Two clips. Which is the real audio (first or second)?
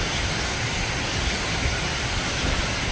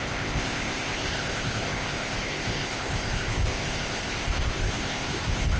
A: first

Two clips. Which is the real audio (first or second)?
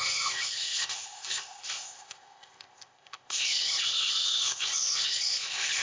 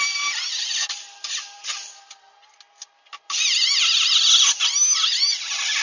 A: second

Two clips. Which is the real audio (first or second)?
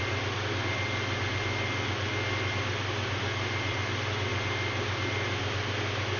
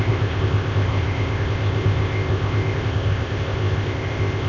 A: first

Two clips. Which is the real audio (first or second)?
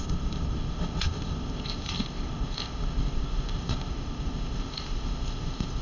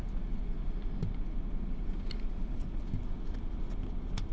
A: second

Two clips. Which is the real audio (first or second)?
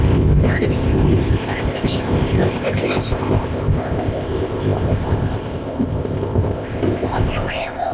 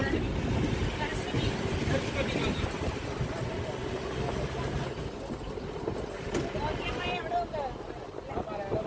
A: second